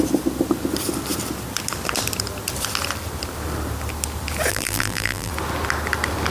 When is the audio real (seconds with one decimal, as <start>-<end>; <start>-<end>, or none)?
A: 0.0-4.5; 5.3-6.3